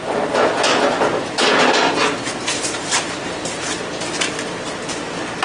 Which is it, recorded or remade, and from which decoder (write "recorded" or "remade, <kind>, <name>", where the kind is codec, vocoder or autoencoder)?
recorded